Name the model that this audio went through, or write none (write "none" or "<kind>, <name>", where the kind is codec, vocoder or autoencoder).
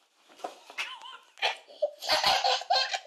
none